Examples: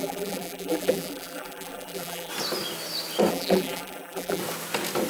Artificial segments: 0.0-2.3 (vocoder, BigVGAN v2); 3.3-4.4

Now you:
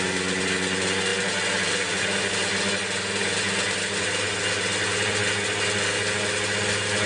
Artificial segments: none

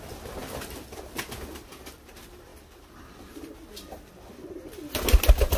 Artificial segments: none

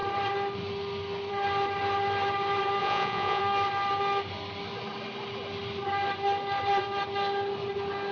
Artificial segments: 2.8-3.4 (vocoder, Vocos)

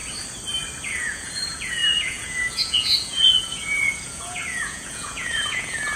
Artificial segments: 0.9-6.0 (vocoder, Vocos)

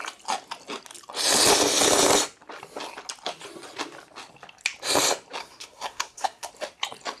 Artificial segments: 5.4-6.5 (codec, SNAC)

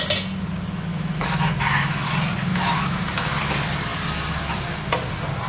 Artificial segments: 0.9-2.1 (autoencoder, DAC-VAE); 2.5-3.4

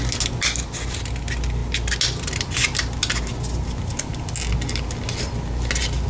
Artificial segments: none